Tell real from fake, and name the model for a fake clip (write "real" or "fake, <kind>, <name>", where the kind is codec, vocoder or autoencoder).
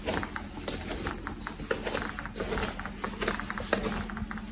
real